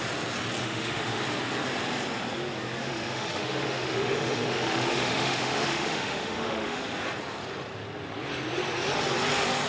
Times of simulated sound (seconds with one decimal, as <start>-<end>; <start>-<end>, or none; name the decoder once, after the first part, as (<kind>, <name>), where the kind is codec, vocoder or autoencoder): 0.6-1.2 (autoencoder, DAC-VAE); 2.8-6.8